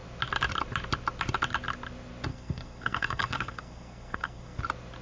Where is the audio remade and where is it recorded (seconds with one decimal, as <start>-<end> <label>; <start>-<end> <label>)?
0.0-2.3 recorded; 2.3-4.6 remade; 4.6-5.0 recorded